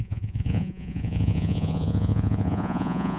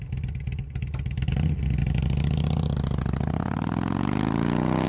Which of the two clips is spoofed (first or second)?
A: first